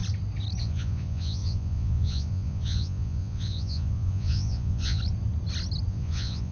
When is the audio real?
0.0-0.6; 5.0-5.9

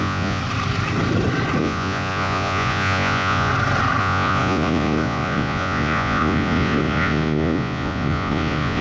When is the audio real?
0.4-1.6; 3.5-4.0

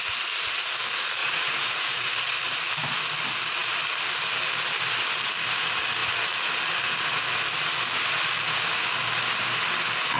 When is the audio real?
0.0-1.2; 2.1-10.2